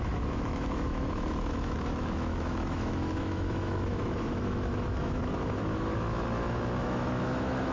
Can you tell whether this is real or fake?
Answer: fake